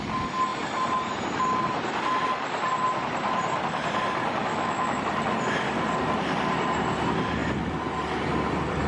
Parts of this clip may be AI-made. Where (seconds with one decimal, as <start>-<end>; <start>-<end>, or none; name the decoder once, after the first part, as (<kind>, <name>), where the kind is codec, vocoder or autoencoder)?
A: 4.5-5.0 (autoencoder, DAC-VAE)

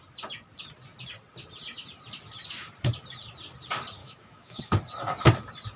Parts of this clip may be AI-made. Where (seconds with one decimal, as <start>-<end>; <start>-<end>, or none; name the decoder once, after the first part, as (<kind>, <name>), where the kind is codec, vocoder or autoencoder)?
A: 4.0-4.6 (autoencoder, DAC-VAE)

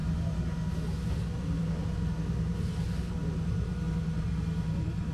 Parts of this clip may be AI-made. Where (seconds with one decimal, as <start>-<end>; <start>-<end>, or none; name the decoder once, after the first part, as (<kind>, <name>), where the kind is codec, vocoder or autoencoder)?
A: none

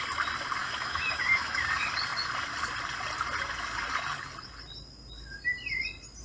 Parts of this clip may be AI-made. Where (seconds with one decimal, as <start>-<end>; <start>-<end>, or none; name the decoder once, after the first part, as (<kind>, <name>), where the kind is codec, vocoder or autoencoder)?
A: 0.6-1.6 (autoencoder, DAC-VAE)

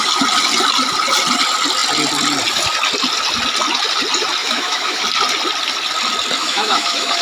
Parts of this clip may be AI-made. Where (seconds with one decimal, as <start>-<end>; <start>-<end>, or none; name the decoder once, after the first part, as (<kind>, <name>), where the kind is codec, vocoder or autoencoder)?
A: 4.4-5.0 (autoencoder, DAC-VAE); 6.4-7.2